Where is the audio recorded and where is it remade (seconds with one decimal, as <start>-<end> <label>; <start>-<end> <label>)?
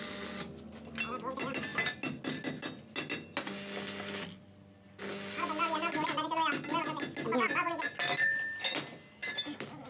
0.0-9.9 recorded